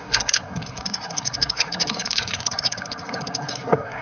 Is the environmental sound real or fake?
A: fake